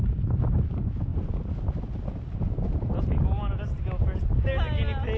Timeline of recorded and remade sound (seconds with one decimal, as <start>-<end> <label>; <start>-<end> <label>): 0.0-5.2 recorded